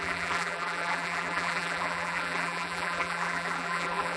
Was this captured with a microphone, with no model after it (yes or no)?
no